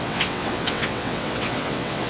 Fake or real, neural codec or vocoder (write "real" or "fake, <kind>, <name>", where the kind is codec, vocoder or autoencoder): fake, vocoder, WaveNeXt